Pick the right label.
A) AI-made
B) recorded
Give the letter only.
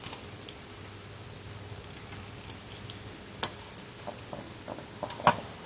B